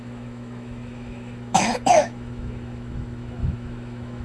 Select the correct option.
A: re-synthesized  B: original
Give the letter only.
A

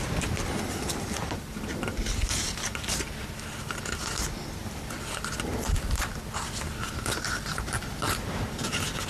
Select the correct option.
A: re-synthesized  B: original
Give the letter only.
B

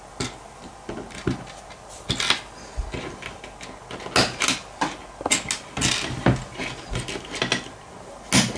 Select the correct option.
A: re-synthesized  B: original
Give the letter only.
B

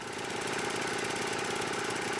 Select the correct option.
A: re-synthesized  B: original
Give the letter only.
B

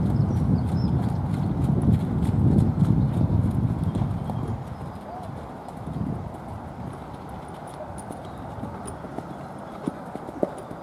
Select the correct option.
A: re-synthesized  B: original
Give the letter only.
B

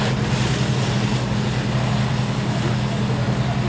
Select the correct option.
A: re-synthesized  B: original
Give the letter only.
B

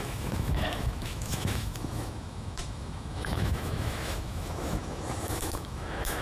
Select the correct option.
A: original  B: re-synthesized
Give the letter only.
B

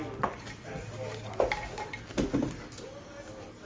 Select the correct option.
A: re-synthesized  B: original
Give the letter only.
B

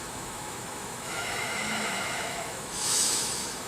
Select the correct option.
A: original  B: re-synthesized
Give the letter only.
B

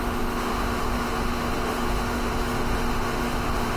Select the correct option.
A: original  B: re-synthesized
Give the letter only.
B